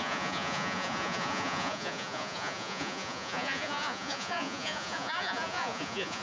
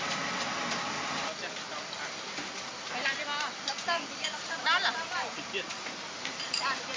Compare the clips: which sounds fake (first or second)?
first